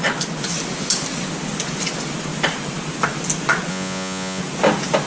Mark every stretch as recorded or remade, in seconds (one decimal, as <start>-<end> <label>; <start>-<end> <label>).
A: 0.0-3.7 recorded; 3.7-4.4 remade; 4.4-5.1 recorded